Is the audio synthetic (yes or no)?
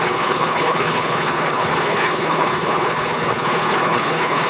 yes